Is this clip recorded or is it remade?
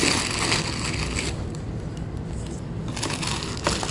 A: recorded